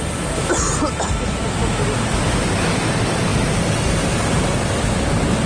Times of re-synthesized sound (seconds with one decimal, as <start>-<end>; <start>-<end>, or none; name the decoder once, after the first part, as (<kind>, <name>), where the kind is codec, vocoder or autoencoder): none

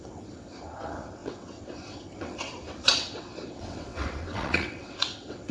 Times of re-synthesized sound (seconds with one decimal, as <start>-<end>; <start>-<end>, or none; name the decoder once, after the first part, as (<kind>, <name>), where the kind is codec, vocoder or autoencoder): 0.0-5.5 (vocoder, WaveNeXt)

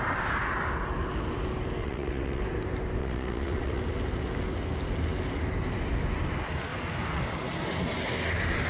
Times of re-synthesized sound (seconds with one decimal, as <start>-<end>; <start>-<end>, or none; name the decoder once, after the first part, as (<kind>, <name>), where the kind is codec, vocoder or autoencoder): 1.8-2.4 (vocoder, WaveNeXt); 3.0-3.8

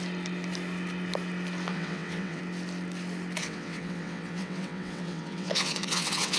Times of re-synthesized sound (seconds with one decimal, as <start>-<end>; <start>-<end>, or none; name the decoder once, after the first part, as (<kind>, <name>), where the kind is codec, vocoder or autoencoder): 1.7-2.4 (vocoder, WaveNeXt); 3.4-6.4